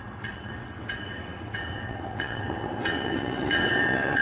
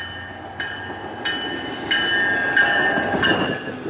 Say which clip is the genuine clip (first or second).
second